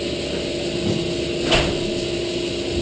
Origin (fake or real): real